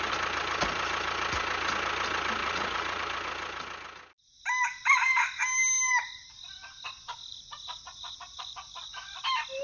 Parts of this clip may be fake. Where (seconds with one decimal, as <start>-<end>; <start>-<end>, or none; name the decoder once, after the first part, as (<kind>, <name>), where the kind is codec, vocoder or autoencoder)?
2.4-3.0 (vocoder, Vocos); 7.3-9.2